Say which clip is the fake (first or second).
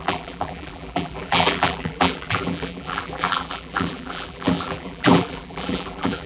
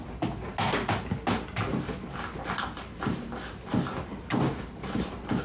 first